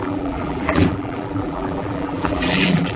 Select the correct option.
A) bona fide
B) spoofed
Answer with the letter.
B